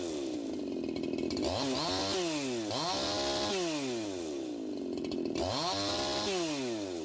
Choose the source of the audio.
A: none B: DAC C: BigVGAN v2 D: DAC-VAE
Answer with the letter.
A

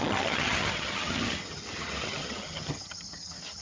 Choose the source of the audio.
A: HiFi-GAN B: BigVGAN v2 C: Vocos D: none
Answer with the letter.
A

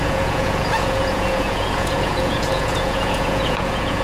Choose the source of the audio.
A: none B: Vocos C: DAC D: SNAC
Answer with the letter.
B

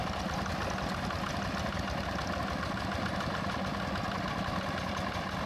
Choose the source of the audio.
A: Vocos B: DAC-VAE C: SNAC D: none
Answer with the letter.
D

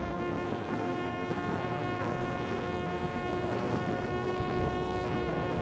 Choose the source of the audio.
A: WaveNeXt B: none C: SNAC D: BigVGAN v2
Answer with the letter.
C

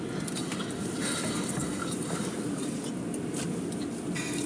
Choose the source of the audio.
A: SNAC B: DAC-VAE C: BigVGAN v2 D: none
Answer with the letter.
D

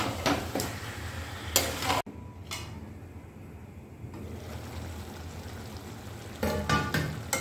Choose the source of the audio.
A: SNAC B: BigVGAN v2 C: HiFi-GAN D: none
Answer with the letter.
D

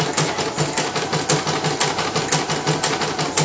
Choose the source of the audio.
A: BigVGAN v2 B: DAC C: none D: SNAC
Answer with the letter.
C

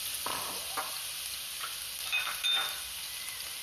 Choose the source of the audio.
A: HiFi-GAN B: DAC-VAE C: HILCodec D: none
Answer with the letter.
D